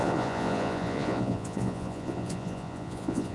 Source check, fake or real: fake